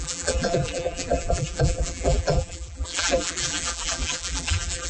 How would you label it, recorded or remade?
remade